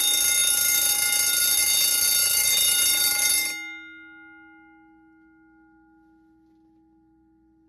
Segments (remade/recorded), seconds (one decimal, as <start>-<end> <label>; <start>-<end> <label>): 0.0-2.2 recorded; 2.2-3.3 remade; 3.3-7.7 recorded